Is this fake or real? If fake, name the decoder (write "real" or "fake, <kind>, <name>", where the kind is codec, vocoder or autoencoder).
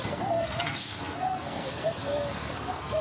fake, codec, SNAC